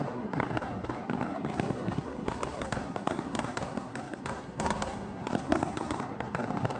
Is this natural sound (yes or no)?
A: no